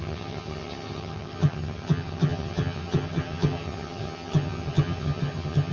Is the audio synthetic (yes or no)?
yes